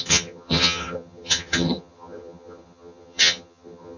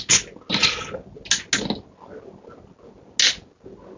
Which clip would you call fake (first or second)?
first